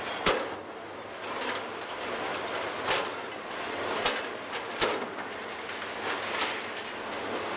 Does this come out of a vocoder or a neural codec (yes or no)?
no